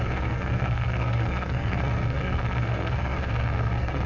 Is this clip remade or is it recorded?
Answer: remade